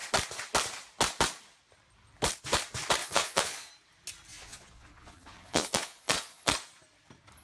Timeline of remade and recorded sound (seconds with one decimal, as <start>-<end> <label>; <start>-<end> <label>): 0.0-3.0 recorded; 3.0-3.7 remade; 3.7-4.3 recorded; 4.3-6.5 remade; 6.5-7.4 recorded